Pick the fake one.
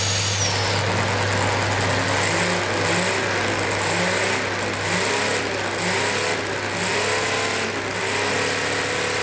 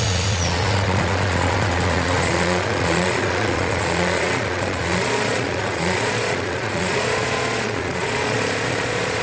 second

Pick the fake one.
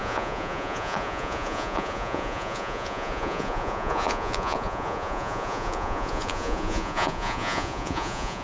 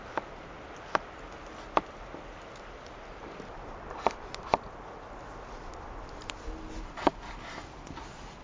first